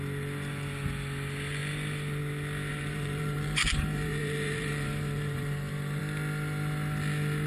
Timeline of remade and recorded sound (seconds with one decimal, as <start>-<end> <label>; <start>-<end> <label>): 0.0-2.7 recorded; 2.7-6.0 remade; 6.0-7.5 recorded

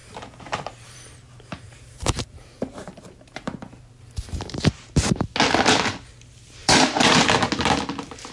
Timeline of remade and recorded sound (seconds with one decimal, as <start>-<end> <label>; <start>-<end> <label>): 0.0-4.6 remade; 4.6-6.6 recorded; 6.6-7.2 remade; 7.2-8.3 recorded

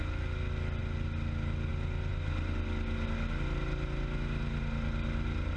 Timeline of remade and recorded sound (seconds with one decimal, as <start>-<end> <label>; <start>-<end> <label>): 0.0-5.6 recorded

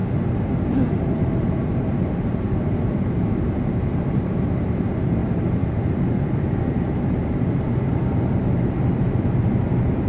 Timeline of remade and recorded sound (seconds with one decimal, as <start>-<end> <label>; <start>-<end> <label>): 0.0-4.7 remade; 4.7-5.2 recorded; 5.2-8.9 remade; 8.9-10.1 recorded

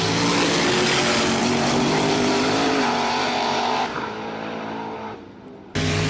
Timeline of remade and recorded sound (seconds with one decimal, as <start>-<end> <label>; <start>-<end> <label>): 0.0-1.4 recorded; 1.4-5.1 remade; 5.1-6.1 recorded